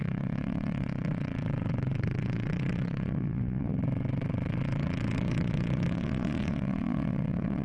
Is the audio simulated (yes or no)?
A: yes